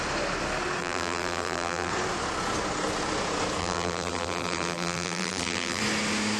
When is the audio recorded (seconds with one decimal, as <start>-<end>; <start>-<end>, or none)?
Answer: 0.0-0.8; 1.9-3.6; 5.8-6.4